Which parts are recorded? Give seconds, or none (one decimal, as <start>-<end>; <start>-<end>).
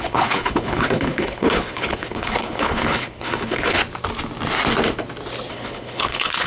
3.8-5.5